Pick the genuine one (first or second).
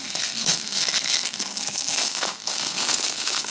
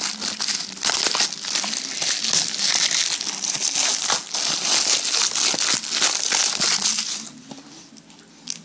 second